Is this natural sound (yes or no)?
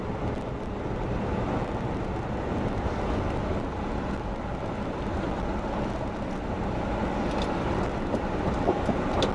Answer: yes